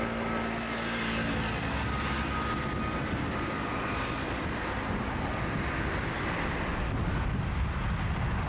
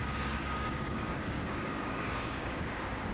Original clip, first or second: first